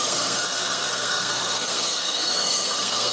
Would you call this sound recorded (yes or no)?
no